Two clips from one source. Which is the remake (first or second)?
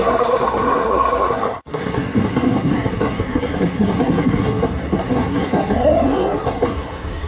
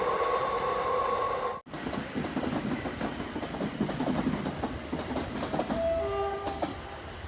first